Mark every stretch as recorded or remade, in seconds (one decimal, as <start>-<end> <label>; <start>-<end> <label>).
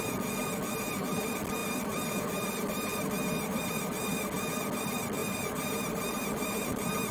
0.0-5.2 recorded; 5.2-7.1 remade